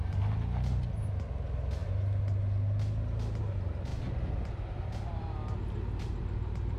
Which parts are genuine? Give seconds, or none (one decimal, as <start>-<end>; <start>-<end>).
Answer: 0.0-6.8